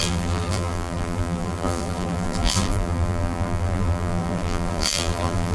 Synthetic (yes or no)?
yes